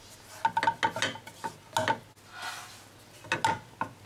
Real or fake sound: real